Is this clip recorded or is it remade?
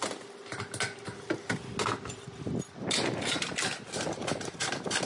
recorded